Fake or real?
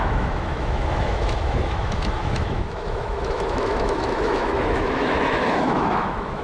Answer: fake